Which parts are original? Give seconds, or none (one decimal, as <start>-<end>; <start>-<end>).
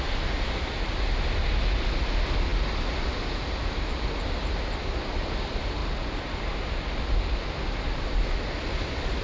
0.0-9.2